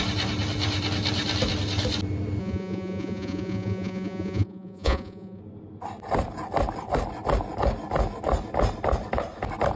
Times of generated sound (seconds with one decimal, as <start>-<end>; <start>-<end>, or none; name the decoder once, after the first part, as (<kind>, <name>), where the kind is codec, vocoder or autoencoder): 2.4-5.4 (vocoder, Vocos)